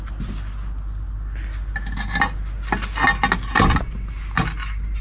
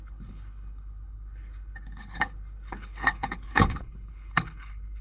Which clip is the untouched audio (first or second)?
first